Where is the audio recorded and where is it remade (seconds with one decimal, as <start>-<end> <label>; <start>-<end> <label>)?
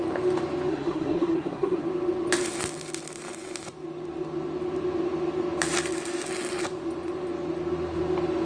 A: 0.0-0.7 recorded; 0.7-1.8 remade; 1.8-8.4 recorded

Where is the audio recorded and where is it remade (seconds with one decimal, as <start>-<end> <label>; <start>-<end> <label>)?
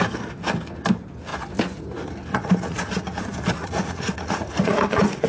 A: 0.0-2.3 recorded; 2.3-3.2 remade; 3.2-3.6 recorded; 3.6-5.3 remade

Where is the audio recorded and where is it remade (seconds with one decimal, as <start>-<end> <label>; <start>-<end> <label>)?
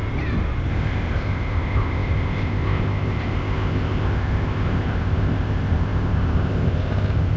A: 0.0-0.7 recorded; 0.7-7.4 remade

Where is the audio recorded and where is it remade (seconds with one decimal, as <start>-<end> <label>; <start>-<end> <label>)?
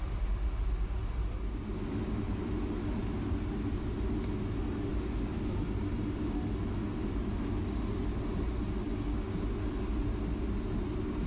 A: 0.0-11.3 recorded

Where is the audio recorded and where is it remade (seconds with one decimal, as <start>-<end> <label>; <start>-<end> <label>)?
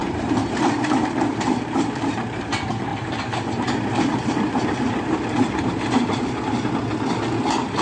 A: 0.0-2.5 remade; 2.5-2.9 recorded; 2.9-6.7 remade; 6.7-7.8 recorded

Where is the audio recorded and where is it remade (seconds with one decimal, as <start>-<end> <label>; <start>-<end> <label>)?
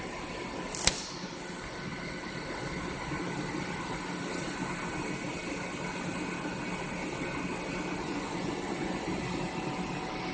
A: 0.0-8.0 recorded; 8.0-9.2 remade; 9.2-10.3 recorded